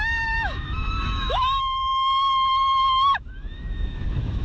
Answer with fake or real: fake